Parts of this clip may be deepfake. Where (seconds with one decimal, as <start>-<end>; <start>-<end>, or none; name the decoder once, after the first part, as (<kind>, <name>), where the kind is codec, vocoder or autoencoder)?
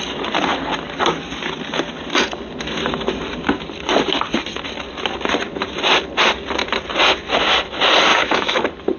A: 8.1-8.6 (autoencoder, DAC-VAE)